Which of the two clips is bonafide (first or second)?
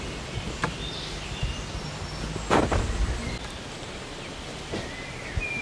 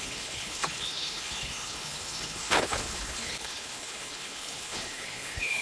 first